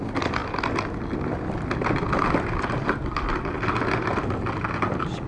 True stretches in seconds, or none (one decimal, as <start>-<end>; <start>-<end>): 0.0-5.3